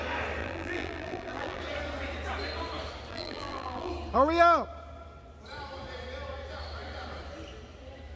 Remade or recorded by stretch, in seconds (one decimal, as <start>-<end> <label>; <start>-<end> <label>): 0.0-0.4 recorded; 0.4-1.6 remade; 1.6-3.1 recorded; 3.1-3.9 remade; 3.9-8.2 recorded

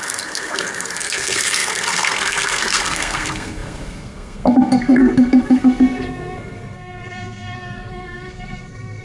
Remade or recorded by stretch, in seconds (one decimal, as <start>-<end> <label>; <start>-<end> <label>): 0.0-9.0 remade

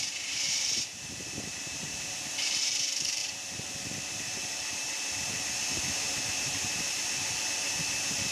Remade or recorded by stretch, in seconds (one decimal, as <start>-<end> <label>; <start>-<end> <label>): 0.0-8.3 remade